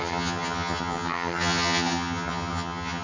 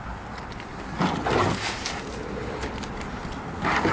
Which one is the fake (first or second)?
first